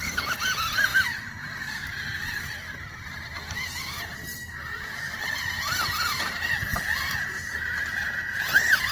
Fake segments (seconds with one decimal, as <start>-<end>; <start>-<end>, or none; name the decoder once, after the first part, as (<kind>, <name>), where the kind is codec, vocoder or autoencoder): 0.9-5.5 (vocoder, BigVGAN v2); 6.7-8.9